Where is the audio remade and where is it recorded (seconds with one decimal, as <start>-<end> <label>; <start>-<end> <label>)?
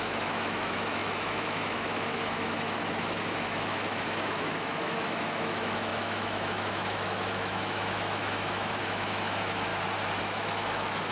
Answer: 0.0-9.7 remade; 9.7-10.2 recorded; 10.2-11.1 remade